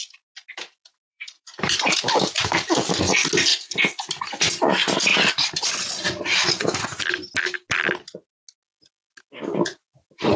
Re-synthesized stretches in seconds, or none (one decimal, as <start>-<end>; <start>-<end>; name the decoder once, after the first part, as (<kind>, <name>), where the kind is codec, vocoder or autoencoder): 1.1-2.9 (vocoder, BigVGAN v2)